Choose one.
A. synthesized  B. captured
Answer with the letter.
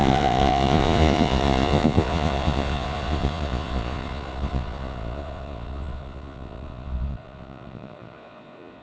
A